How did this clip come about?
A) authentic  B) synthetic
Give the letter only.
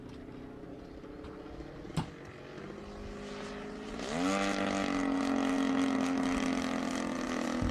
A